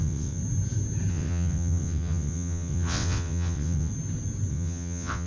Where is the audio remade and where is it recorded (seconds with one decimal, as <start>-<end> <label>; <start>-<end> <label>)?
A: 0.0-0.4 remade; 0.4-1.1 recorded; 1.1-3.9 remade; 3.9-4.5 recorded; 4.5-5.3 remade